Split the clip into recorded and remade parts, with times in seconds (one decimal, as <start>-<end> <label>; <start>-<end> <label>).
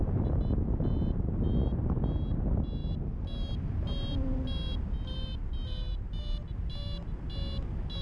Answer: 0.0-8.0 recorded